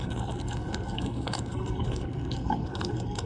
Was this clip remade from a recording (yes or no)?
yes